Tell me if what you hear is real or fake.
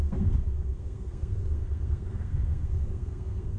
fake